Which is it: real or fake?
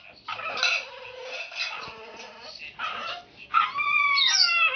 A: real